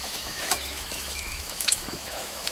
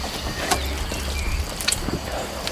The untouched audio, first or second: second